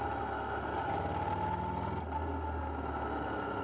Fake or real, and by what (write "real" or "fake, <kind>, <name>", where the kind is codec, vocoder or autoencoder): real